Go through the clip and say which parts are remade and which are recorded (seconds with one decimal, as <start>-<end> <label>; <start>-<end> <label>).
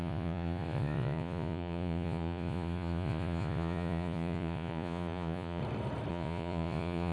0.0-5.6 remade; 5.6-6.1 recorded; 6.1-7.1 remade